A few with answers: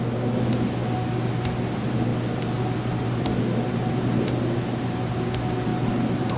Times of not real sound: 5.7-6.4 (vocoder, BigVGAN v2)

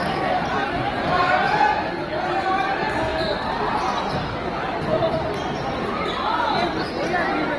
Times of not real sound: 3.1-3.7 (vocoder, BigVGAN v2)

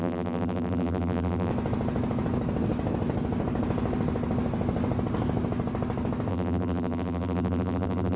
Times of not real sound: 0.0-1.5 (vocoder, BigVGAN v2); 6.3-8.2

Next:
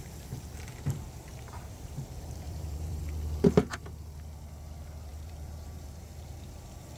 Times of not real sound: 1.3-3.0 (vocoder, BigVGAN v2); 5.1-6.6

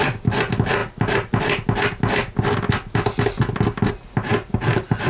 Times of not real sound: none

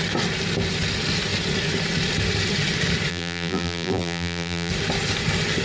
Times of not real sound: 3.1-4.7 (vocoder, BigVGAN v2)

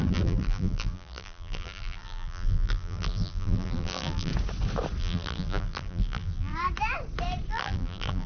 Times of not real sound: 0.0-4.3 (vocoder, BigVGAN v2); 5.0-6.5; 7.5-8.3

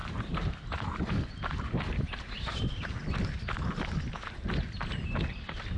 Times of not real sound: 0.0-2.9 (vocoder, BigVGAN v2)